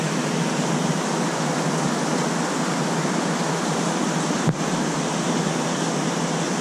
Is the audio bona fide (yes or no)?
yes